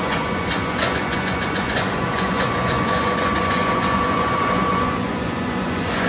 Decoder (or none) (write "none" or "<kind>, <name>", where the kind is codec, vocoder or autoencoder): vocoder, Vocos